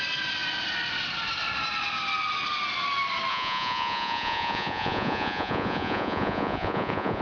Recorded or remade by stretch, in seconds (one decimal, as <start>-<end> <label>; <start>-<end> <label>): 0.0-3.3 recorded; 3.3-7.2 remade

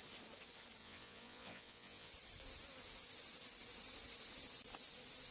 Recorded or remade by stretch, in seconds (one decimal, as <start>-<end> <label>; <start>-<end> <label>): 0.0-0.8 recorded; 0.8-2.1 remade; 2.1-5.3 recorded